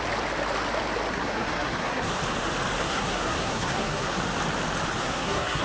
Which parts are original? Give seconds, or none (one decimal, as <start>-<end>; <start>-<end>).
0.0-1.1; 2.2-2.8; 4.2-5.0